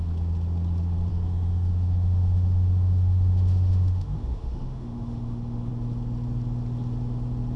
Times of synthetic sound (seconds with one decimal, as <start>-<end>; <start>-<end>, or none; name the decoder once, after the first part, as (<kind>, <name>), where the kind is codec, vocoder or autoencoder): 1.1-5.7 (autoencoder, DAC-VAE)